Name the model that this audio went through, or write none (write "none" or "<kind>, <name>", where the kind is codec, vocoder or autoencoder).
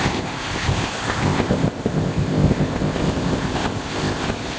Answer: codec, ZipCodec